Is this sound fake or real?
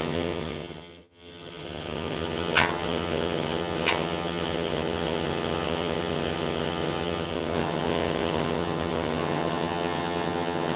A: fake